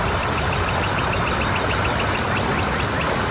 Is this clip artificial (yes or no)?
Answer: no